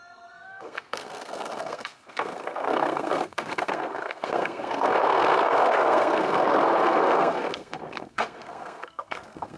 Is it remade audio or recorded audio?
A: remade